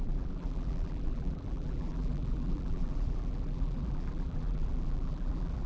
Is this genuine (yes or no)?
no